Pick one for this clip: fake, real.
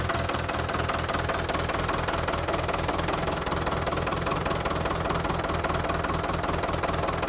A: real